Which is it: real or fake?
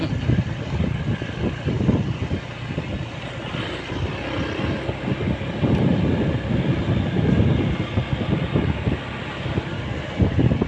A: real